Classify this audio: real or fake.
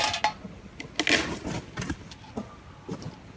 real